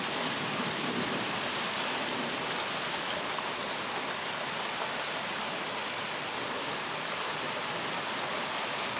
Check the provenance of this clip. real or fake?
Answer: real